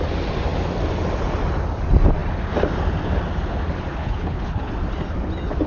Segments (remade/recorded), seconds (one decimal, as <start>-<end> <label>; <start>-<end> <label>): 0.0-3.9 recorded; 3.9-4.7 remade; 4.7-5.7 recorded